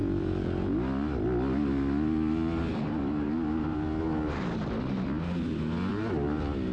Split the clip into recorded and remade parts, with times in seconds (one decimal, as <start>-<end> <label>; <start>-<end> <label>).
0.0-6.7 recorded